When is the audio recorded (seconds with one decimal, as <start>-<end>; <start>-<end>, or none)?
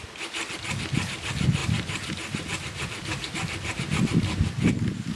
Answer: 0.0-5.2